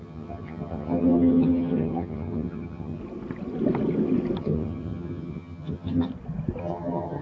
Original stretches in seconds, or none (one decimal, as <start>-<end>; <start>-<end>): 3.0-4.4; 6.1-6.6